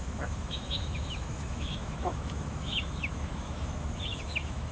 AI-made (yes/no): yes